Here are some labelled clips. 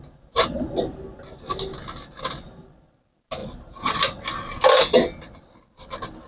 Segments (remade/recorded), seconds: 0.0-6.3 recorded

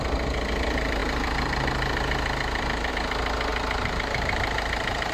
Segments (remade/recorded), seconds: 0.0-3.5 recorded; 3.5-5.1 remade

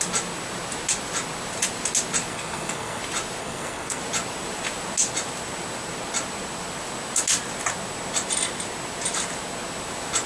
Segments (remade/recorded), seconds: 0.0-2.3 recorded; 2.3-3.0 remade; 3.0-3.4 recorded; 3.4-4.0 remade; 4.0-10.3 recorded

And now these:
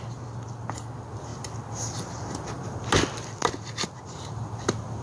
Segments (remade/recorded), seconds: 0.0-5.0 recorded

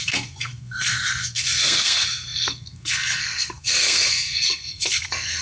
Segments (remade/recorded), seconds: 0.0-5.4 remade

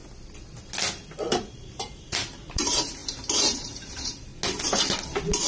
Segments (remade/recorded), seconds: 0.0-1.3 recorded; 1.3-4.3 remade; 4.3-5.5 recorded